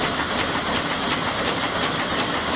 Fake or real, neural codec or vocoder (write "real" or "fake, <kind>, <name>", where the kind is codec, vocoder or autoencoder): real